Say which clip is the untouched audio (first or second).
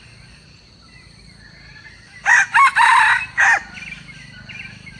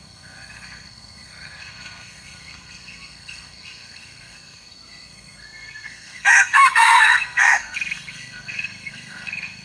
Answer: first